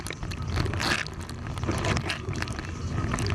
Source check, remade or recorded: recorded